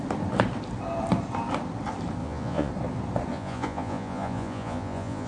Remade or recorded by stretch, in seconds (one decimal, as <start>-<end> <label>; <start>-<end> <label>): 0.0-2.2 recorded; 2.2-2.7 remade; 2.7-3.3 recorded; 3.3-5.3 remade